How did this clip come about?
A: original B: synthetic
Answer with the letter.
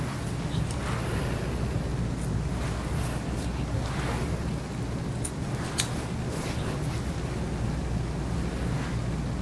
A